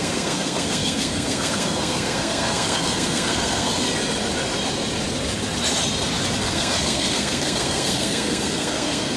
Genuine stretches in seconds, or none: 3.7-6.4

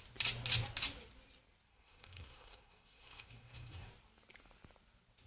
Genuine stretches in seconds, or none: 0.0-1.7; 3.9-5.3